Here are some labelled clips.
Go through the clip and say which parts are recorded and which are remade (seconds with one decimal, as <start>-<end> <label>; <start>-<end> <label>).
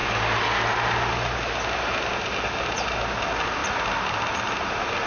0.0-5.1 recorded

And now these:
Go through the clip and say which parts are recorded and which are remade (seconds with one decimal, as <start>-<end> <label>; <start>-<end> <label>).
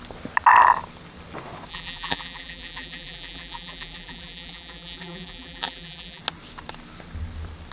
0.0-1.7 recorded; 1.7-6.2 remade; 6.2-7.7 recorded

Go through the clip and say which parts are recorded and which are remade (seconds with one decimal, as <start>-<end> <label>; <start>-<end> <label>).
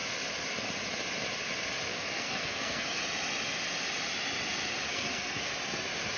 0.0-1.9 recorded; 1.9-3.0 remade; 3.0-4.9 recorded; 4.9-5.5 remade; 5.5-6.2 recorded